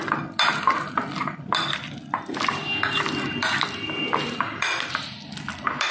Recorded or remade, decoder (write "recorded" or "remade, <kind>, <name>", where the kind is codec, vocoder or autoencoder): recorded